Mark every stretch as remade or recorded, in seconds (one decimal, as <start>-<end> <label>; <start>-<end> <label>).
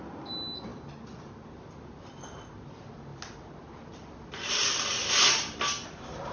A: 0.0-6.3 recorded